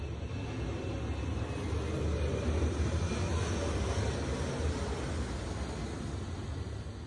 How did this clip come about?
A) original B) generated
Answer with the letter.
A